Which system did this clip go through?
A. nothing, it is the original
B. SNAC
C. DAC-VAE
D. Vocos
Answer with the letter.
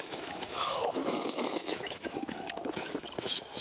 C